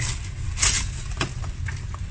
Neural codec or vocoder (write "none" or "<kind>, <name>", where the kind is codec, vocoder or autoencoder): none